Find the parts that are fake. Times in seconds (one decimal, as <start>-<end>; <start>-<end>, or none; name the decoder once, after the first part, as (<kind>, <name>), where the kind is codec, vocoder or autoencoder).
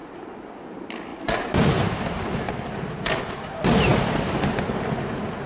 0.0-0.6 (vocoder, BigVGAN v2); 1.1-3.3; 3.9-5.1